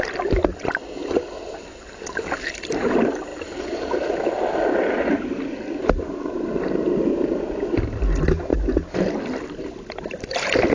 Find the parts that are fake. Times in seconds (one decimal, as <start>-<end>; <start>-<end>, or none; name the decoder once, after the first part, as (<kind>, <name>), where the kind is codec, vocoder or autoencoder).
none